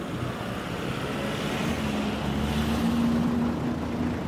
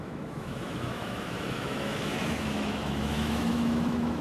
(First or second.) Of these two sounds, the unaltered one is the first